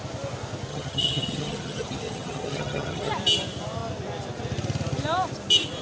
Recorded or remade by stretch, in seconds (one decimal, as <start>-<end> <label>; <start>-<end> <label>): 0.0-0.7 recorded; 0.7-3.1 remade; 3.1-5.8 recorded